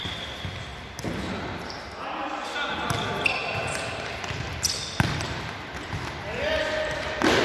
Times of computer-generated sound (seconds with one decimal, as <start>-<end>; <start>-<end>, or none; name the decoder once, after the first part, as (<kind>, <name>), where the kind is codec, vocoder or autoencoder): 0.0-0.7 (vocoder, BigVGAN v2); 5.1-7.4